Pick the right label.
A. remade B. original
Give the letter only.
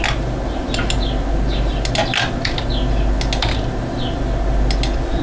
B